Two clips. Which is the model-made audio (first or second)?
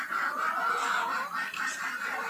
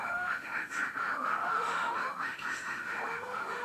second